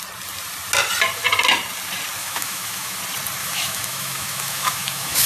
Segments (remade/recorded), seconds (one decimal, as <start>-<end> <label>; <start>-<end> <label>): 0.0-2.2 recorded; 2.2-3.0 remade; 3.0-3.4 recorded; 3.4-5.3 remade